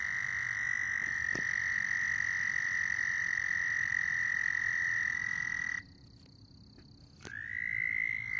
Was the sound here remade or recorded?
recorded